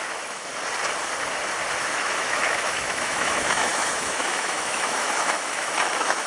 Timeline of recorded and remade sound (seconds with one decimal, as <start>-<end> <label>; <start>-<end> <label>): 0.0-0.5 remade; 0.5-1.8 recorded; 1.8-6.3 remade